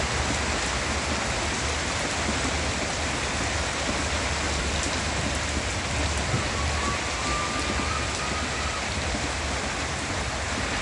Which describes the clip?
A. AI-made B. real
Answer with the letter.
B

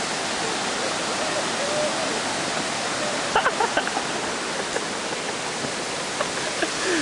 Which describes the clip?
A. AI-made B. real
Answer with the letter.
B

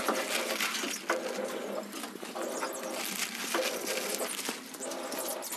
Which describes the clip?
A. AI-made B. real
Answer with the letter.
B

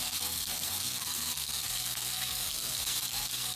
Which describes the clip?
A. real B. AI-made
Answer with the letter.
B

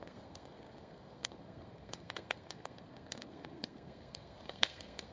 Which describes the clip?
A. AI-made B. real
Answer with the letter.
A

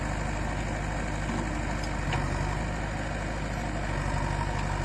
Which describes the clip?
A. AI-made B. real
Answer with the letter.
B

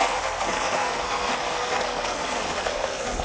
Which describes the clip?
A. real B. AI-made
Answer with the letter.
B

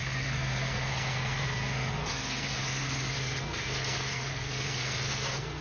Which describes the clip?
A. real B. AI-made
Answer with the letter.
B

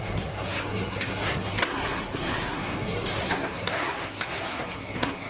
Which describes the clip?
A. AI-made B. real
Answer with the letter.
A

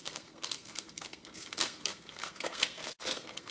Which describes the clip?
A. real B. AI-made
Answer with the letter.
B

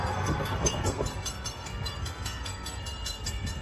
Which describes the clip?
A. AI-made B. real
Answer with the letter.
A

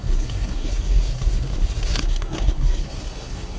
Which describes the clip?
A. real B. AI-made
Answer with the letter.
B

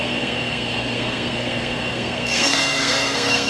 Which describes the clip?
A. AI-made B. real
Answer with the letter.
A